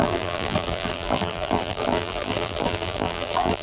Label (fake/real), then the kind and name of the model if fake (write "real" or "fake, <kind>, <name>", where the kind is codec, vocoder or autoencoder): fake, vocoder, BigVGAN v2